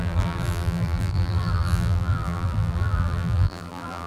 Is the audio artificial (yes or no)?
yes